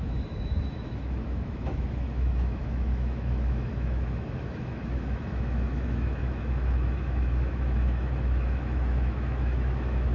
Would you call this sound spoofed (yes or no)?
yes